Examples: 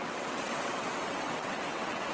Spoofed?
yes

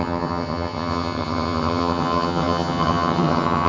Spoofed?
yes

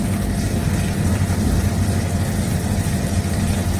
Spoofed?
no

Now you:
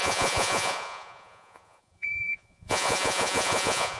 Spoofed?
yes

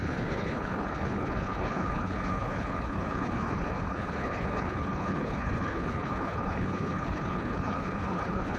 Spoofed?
yes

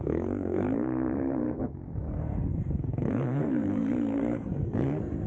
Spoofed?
yes